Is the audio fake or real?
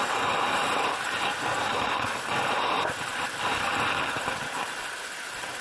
real